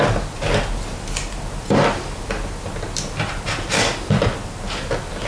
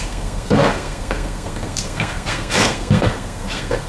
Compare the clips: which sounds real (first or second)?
first